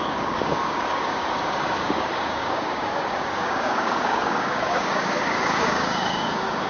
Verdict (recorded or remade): remade